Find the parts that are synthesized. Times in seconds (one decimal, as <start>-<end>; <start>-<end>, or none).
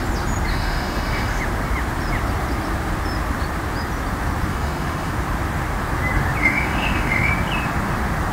0.5-1.4; 4.5-5.1; 6.4-7.3